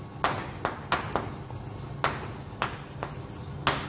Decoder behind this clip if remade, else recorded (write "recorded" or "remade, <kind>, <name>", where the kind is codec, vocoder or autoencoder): recorded